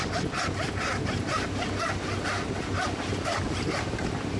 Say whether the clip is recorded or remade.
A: recorded